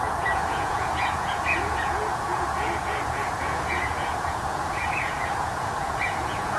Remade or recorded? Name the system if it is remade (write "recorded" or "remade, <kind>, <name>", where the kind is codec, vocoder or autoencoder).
remade, vocoder, Vocos